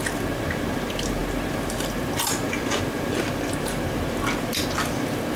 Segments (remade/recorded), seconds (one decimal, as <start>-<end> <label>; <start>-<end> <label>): 0.0-5.4 recorded